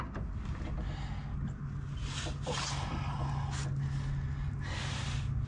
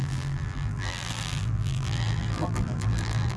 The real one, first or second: first